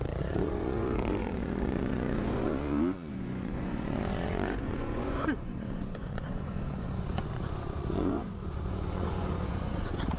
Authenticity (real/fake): fake